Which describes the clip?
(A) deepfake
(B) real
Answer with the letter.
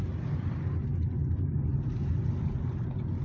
B